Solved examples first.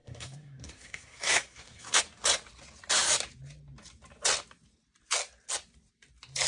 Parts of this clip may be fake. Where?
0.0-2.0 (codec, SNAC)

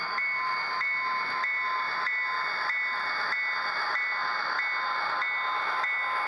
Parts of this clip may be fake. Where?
none

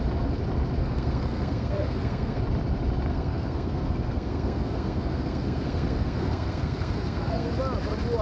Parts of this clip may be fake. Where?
0.8-2.4 (codec, SNAC); 3.1-7.5

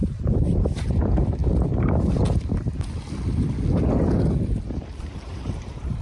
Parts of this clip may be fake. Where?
0.0-1.4 (vocoder, BigVGAN v2); 5.0-6.0

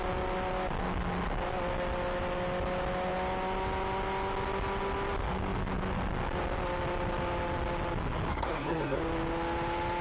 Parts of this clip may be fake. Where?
8.3-9.0 (codec, SNAC)

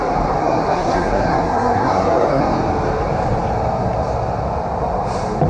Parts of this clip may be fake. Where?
0.4-2.4 (codec, SNAC)